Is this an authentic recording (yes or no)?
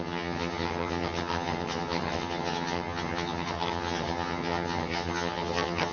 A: no